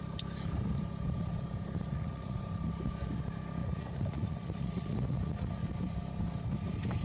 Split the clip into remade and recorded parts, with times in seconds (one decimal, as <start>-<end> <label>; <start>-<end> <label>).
0.0-1.9 recorded; 1.9-2.4 remade; 2.4-3.6 recorded; 3.6-5.6 remade; 5.6-7.0 recorded